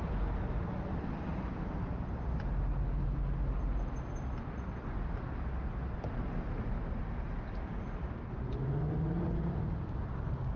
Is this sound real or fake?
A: real